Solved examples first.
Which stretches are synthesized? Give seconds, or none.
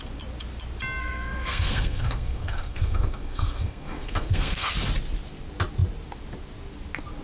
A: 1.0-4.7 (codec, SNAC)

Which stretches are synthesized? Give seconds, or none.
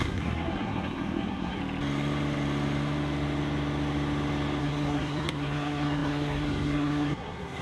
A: 0.0-1.6 (codec, SNAC); 4.6-7.6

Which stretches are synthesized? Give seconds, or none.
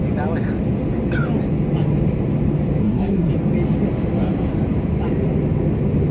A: 2.8-3.3 (codec, SNAC)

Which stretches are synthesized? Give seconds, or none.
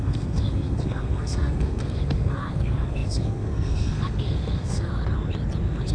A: 0.0-4.9 (codec, SNAC)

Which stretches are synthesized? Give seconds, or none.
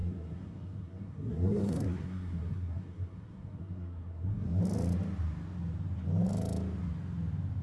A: 0.0-4.6 (codec, SNAC)